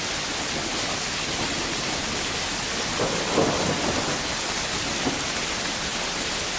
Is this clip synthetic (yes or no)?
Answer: no